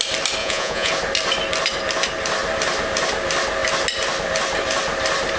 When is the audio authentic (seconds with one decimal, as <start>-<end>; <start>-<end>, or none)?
0.0-0.4; 0.9-5.4

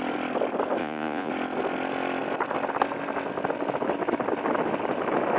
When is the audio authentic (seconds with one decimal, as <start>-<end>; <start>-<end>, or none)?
0.0-0.8; 1.3-5.4

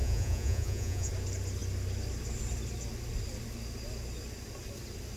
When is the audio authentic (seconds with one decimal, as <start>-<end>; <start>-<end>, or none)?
1.1-5.2

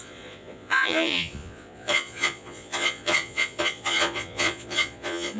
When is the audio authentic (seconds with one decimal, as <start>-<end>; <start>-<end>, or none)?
none